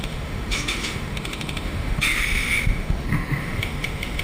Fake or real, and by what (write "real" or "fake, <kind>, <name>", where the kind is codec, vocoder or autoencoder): fake, autoencoder, DAC-VAE